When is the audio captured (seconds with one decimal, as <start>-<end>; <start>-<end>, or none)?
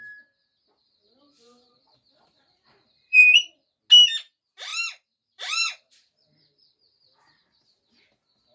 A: 0.0-0.8; 3.5-4.7; 7.4-8.5